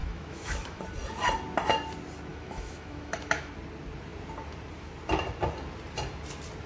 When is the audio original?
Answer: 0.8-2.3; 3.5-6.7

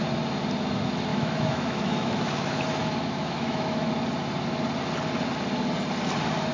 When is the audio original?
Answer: 0.0-1.1; 3.9-6.5

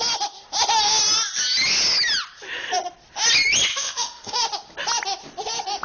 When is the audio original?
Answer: 0.0-3.7; 4.4-5.8

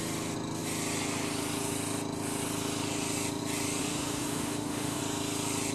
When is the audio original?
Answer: 0.0-3.8; 5.0-5.7

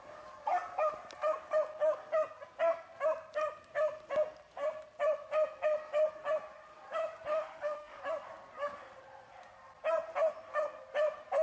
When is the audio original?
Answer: 0.0-7.3; 8.0-11.4

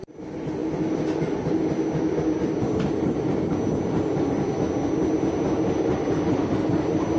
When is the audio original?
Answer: 0.0-7.2

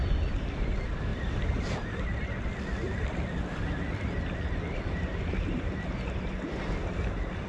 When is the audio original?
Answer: 0.0-7.5